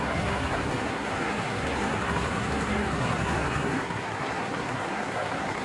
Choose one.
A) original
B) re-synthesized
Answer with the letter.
B